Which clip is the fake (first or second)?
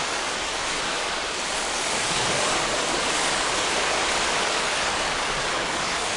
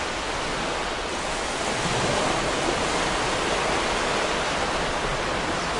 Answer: first